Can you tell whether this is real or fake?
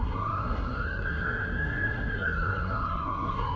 fake